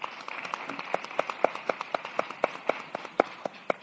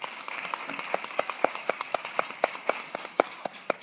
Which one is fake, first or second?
second